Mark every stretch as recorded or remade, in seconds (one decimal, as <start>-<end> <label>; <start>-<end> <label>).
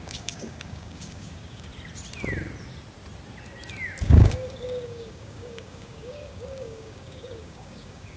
0.0-1.7 remade; 1.7-4.0 recorded; 4.0-8.2 remade